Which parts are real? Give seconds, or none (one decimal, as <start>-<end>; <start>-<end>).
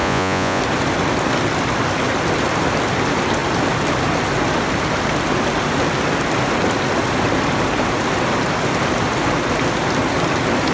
0.6-10.7